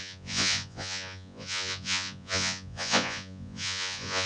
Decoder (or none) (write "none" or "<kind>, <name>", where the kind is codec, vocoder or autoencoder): vocoder, Vocos